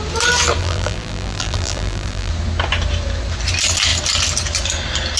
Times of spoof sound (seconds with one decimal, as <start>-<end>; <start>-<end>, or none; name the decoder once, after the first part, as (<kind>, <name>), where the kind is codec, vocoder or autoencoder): 0.6-2.3 (vocoder, BigVGAN v2)

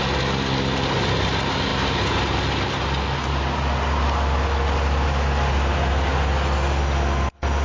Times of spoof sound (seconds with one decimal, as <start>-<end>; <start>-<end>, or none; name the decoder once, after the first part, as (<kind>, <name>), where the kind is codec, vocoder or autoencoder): 1.7-2.2 (vocoder, BigVGAN v2)

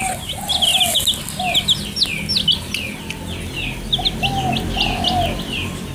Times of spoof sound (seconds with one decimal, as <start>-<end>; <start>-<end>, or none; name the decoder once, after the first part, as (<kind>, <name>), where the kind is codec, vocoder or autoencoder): none

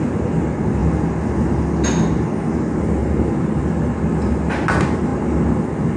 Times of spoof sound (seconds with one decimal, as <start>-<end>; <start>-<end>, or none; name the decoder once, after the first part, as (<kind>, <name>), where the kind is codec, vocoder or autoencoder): 3.0-3.6 (vocoder, BigVGAN v2)